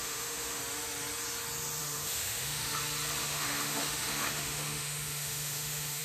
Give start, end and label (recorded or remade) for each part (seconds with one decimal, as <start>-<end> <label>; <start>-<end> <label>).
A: 0.0-0.6 remade; 0.6-1.8 recorded; 1.8-2.8 remade; 2.8-3.2 recorded; 3.2-6.0 remade